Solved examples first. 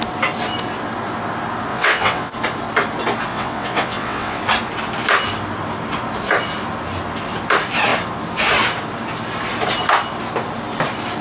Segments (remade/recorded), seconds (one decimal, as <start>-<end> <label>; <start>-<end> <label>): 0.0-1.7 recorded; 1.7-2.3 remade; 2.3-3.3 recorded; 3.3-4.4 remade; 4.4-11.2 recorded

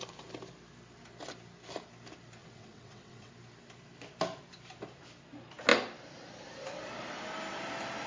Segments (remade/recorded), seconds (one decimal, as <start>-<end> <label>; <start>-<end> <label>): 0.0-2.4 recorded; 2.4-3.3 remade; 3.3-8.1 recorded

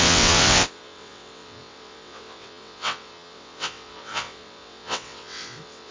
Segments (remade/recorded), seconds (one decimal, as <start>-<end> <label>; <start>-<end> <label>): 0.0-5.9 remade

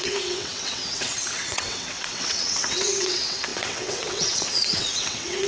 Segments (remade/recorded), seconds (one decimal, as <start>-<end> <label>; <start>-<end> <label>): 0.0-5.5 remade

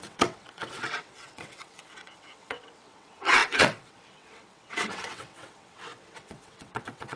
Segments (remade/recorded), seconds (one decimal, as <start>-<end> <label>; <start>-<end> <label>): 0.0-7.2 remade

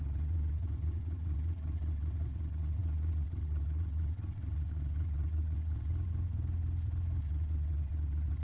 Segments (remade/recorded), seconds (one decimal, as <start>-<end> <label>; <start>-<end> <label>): 0.0-5.9 remade; 5.9-7.2 recorded; 7.2-8.4 remade

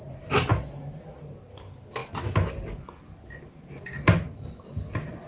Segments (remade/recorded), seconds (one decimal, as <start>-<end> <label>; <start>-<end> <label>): 0.0-5.3 recorded